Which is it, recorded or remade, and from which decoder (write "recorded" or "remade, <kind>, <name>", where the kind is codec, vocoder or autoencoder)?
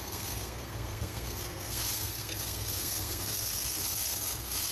remade, codec, SNAC